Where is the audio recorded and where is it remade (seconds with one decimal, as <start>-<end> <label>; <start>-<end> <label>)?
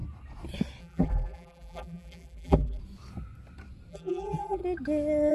0.0-0.8 recorded; 0.8-2.8 remade; 2.8-3.9 recorded; 3.9-4.6 remade; 4.6-5.3 recorded